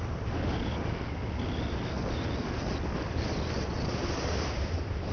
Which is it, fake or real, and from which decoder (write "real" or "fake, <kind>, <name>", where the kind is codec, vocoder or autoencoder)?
real